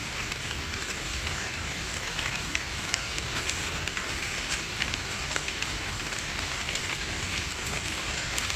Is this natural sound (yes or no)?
no